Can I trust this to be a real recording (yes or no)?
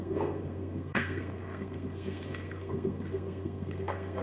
no